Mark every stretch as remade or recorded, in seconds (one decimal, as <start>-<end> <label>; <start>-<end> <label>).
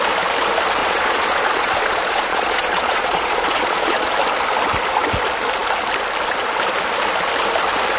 0.0-0.8 recorded; 0.8-4.1 remade; 4.1-8.0 recorded